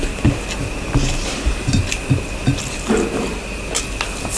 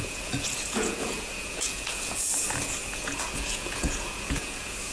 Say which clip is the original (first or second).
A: first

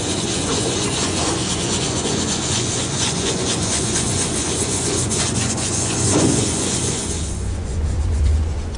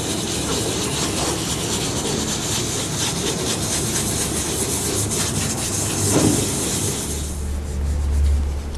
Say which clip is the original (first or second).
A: second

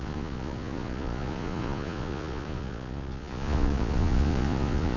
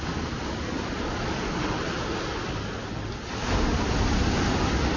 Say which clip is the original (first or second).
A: second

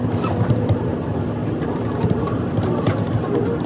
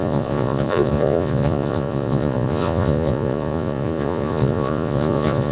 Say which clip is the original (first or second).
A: first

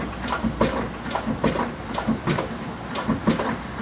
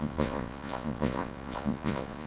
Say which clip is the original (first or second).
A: first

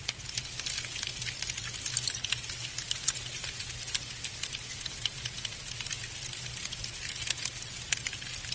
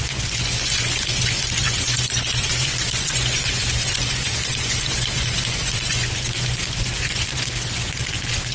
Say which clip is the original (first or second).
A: first